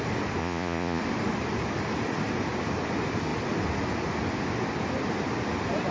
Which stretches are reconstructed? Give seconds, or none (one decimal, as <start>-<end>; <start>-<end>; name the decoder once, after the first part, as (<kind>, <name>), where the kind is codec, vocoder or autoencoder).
0.4-1.0 (vocoder, Vocos)